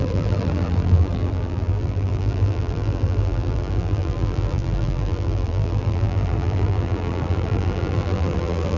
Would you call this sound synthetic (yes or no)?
yes